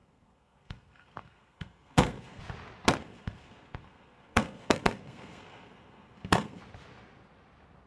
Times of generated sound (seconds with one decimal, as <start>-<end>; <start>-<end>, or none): 0.0-2.4; 3.0-6.6